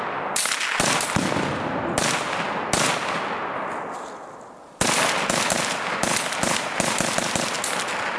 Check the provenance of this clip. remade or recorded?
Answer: recorded